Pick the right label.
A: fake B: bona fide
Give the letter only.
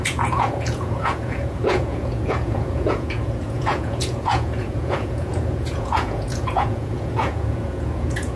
A